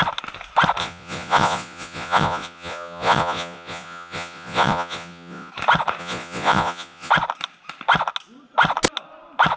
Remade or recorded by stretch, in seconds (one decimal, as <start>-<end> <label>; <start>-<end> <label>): 0.0-0.8 recorded; 0.8-5.5 remade; 5.5-6.0 recorded; 6.0-7.1 remade; 7.1-9.6 recorded

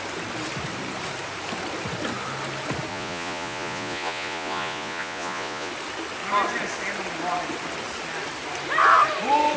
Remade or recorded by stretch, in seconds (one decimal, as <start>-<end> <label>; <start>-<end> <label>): 0.0-2.9 recorded; 2.9-5.7 remade; 5.7-9.6 recorded

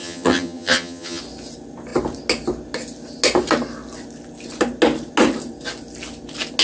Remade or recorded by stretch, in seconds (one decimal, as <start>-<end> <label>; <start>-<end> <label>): 0.0-1.2 remade; 1.2-6.6 recorded

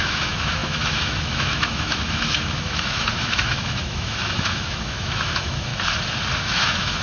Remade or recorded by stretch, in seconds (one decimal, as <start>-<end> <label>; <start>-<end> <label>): 0.0-5.7 remade; 5.7-6.4 recorded; 6.4-7.0 remade

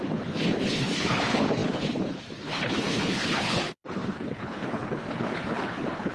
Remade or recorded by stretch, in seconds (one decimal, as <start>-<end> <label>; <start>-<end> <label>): 0.0-6.1 remade

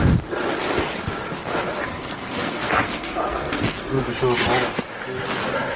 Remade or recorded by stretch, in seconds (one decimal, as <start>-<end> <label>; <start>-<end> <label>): 0.0-1.8 recorded; 1.8-4.0 remade; 4.0-5.8 recorded

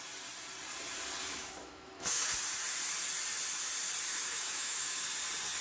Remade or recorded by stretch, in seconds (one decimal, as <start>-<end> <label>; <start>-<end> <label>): 0.0-1.2 recorded; 1.2-2.3 remade; 2.3-4.1 recorded; 4.1-5.0 remade; 5.0-5.6 recorded